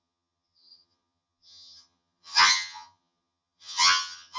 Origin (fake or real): fake